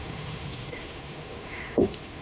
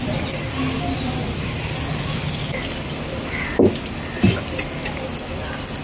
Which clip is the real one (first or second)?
second